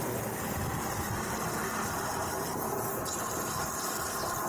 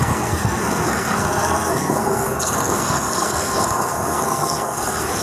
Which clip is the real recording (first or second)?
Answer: first